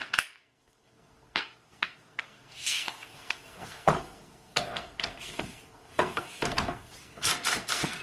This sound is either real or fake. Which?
fake